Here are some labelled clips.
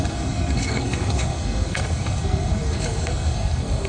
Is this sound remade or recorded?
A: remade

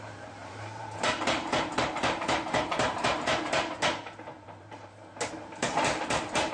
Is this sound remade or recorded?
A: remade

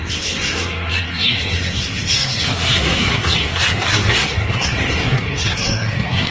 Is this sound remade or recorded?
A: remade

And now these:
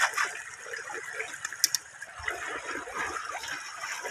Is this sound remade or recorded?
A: recorded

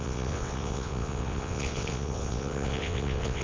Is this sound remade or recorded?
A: remade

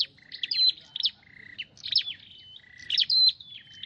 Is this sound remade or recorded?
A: recorded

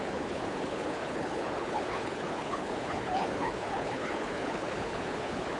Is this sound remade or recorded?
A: remade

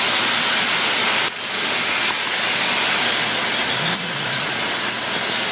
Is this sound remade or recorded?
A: recorded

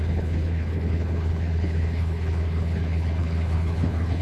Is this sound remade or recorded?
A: remade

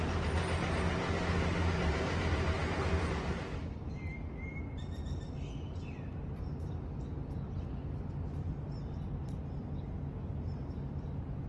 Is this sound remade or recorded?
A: recorded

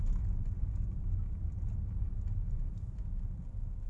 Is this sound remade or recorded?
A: recorded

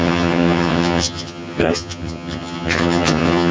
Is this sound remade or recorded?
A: remade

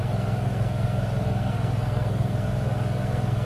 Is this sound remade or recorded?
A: remade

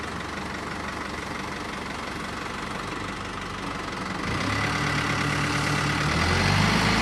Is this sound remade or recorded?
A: recorded